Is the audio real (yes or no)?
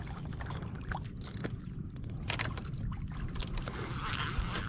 yes